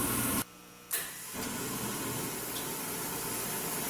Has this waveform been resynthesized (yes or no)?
no